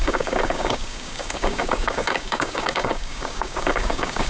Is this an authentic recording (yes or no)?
no